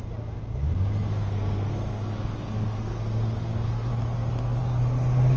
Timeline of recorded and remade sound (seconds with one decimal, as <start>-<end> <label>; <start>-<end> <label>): 0.0-1.1 recorded; 1.1-3.9 remade; 3.9-5.4 recorded